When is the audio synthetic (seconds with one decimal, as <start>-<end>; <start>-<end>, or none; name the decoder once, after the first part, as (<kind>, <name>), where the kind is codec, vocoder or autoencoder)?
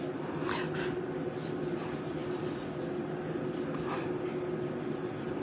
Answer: none